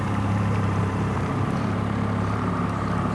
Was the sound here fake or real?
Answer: fake